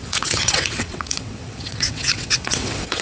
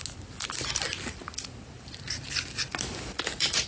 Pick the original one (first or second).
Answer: second